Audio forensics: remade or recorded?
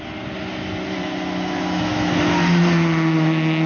recorded